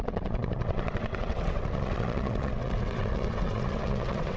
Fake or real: fake